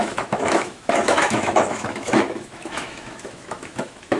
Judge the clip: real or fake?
fake